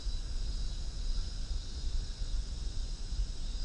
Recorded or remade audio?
remade